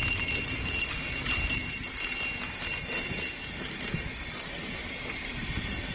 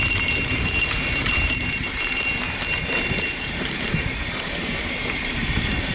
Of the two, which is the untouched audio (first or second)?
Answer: first